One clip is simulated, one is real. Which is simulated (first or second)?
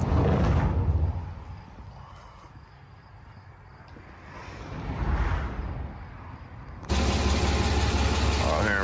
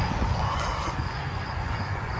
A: second